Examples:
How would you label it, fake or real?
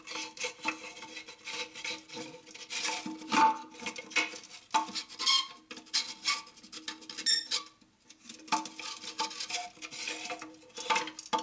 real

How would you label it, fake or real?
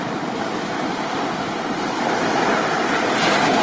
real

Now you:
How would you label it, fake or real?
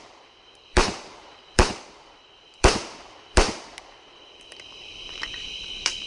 fake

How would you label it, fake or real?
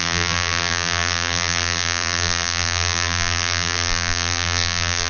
fake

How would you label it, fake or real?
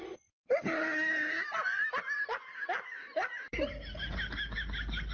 real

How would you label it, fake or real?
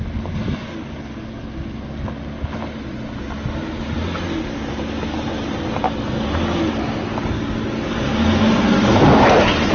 real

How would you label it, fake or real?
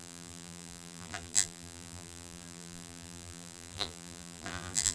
fake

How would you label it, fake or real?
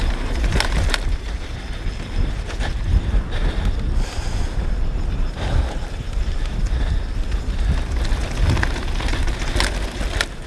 real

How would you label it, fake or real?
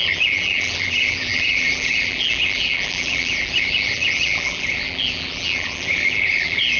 fake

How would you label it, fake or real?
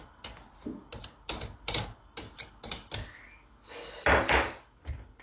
real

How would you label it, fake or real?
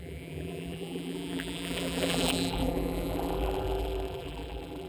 fake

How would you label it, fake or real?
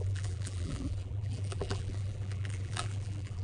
fake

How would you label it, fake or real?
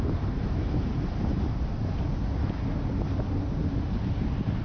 fake